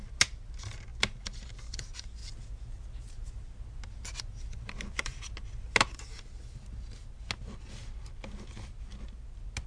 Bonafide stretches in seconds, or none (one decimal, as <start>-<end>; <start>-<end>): 0.0-9.7